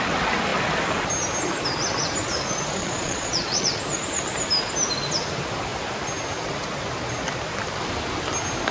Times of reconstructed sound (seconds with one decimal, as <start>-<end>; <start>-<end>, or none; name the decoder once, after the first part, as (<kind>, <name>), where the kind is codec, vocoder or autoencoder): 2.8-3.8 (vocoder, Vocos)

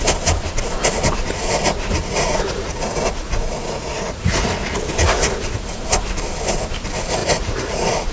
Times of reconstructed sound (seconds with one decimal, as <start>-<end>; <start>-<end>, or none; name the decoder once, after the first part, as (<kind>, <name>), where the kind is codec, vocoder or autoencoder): 2.0-4.5 (vocoder, Vocos); 5.0-5.8; 7.2-8.1

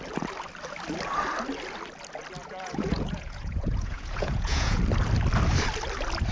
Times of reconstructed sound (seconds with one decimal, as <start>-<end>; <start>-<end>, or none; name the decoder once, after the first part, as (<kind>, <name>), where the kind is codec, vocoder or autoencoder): 2.4-4.8 (vocoder, Vocos)